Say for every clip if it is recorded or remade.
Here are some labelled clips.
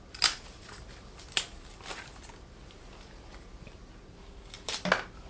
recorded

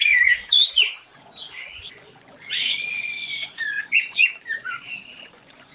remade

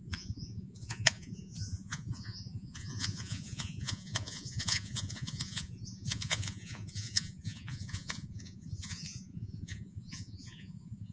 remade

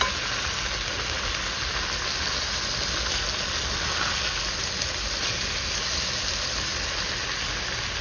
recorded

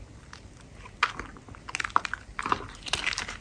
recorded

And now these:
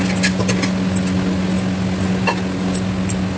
recorded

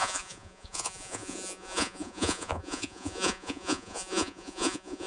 remade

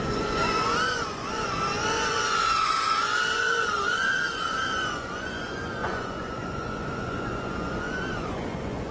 remade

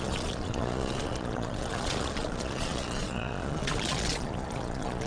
remade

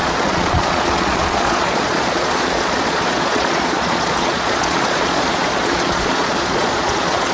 remade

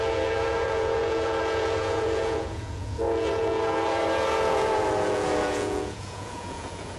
remade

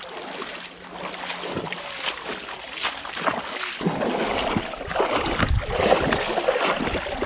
recorded